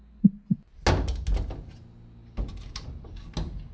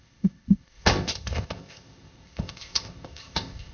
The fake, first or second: second